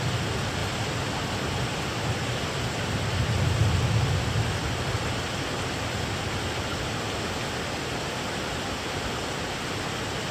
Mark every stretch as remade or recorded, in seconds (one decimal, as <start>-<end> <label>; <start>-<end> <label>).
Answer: 0.0-10.3 recorded